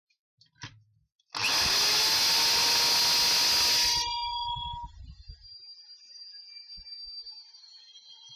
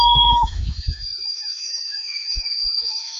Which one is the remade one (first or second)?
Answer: second